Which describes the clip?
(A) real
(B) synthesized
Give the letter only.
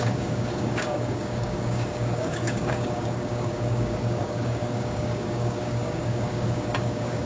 B